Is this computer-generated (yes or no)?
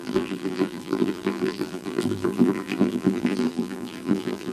yes